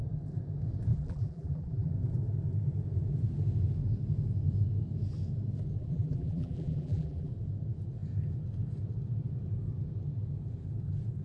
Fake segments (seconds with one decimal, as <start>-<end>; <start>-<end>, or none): 0.9-1.9; 5.8-7.3